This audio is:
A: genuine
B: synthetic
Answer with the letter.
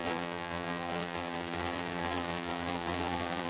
B